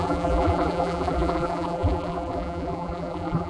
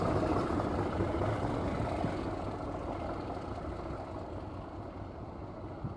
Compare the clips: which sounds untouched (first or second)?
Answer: second